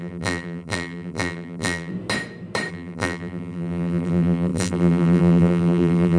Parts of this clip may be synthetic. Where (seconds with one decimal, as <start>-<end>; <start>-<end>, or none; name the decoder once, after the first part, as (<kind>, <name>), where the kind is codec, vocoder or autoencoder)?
0.0-1.9 (vocoder, BigVGAN v2); 2.7-6.2

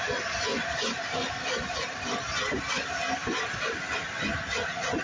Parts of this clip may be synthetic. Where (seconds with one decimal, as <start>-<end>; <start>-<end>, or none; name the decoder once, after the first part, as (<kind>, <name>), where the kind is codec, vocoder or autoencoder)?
0.5-1.8 (vocoder, BigVGAN v2); 3.2-3.8